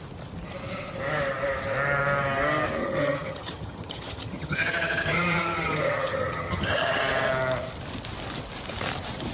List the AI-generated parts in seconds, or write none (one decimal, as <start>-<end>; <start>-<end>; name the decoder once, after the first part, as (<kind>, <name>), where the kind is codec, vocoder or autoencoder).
2.8-7.0 (vocoder, HiFi-GAN)